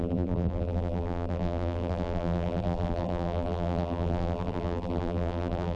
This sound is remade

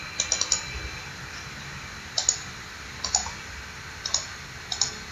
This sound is recorded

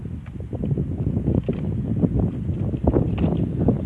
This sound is recorded